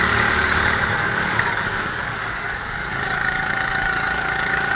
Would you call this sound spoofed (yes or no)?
yes